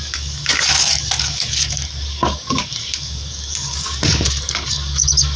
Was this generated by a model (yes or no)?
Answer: yes